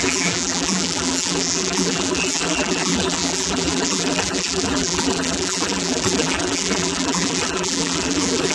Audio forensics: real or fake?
fake